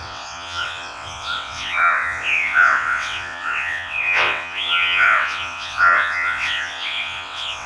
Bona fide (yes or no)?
no